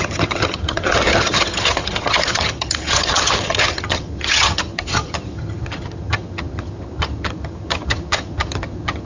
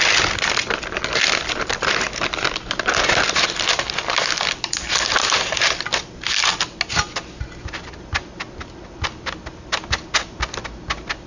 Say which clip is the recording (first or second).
second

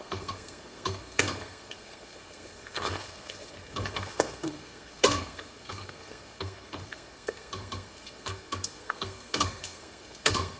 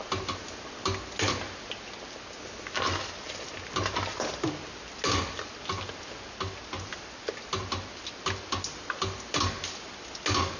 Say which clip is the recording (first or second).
second